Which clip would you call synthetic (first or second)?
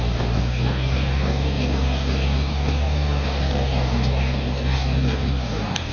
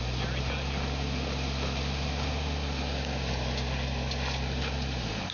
first